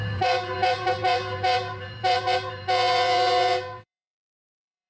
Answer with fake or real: fake